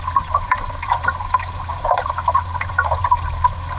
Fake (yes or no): yes